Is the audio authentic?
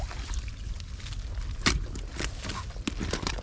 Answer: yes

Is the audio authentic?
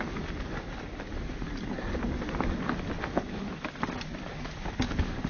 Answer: yes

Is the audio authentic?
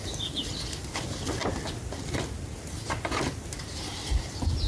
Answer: yes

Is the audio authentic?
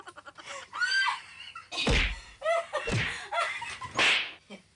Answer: yes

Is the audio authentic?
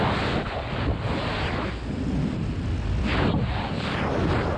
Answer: yes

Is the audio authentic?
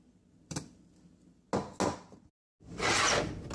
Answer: yes